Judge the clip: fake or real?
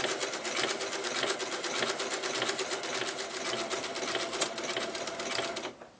real